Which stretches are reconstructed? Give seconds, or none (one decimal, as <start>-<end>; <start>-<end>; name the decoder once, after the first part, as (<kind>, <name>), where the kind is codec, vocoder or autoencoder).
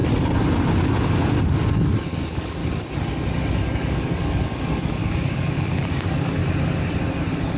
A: 1.5-2.6 (codec, DAC); 3.6-6.4